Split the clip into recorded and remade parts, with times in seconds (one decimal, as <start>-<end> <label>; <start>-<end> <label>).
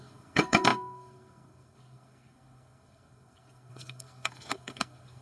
0.0-5.2 remade